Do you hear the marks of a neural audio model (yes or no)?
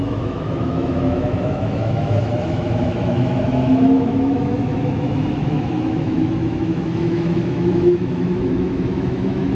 yes